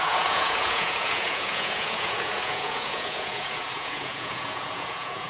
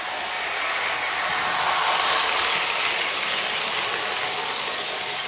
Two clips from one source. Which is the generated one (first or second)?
first